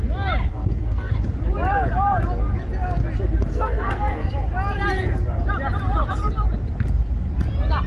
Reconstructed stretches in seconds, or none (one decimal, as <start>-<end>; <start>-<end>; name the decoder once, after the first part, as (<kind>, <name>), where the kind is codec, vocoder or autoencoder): 0.5-1.1 (codec, SNAC); 3.5-4.3